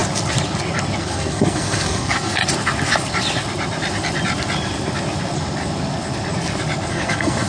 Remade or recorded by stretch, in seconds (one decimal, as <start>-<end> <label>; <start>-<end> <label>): 0.0-1.0 recorded; 1.0-2.4 remade; 2.4-6.9 recorded; 6.9-7.5 remade